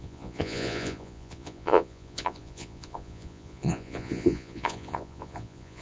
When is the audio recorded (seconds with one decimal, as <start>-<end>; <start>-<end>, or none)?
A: none